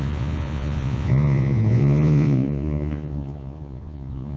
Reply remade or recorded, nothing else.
remade